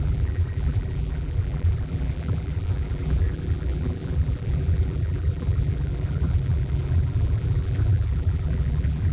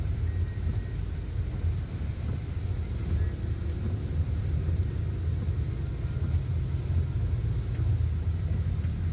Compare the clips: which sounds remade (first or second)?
first